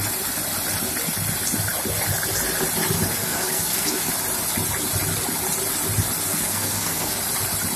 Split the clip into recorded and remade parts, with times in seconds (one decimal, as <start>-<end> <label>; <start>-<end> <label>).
0.0-3.2 recorded; 3.2-4.1 remade; 4.1-6.3 recorded; 6.3-7.2 remade; 7.2-7.8 recorded